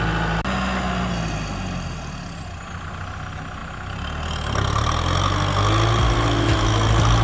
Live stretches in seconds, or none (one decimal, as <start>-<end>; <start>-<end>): 0.0-7.2